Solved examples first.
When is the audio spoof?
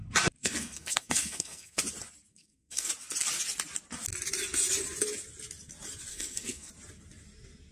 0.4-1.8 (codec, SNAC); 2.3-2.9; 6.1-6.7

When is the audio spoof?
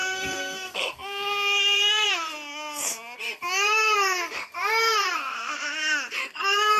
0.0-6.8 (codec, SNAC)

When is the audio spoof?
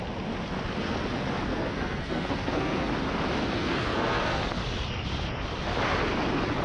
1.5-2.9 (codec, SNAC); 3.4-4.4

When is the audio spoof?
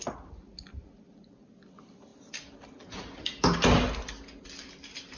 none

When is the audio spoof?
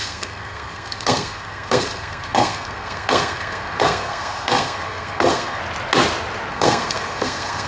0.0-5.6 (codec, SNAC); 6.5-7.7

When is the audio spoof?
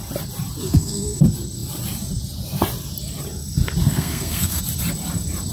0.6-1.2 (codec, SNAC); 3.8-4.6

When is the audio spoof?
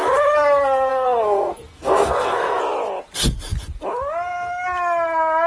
0.9-2.6 (codec, SNAC)